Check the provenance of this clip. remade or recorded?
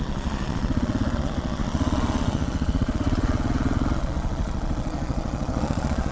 remade